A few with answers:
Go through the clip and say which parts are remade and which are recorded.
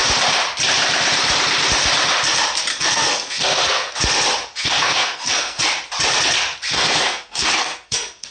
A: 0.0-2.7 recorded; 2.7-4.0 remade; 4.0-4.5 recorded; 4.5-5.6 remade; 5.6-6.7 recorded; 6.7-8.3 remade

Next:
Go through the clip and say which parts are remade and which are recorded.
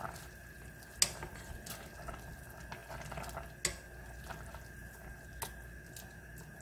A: 0.0-6.6 recorded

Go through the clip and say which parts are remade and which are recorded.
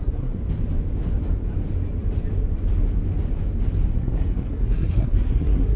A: 0.0-0.4 remade; 0.4-3.9 recorded; 3.9-5.8 remade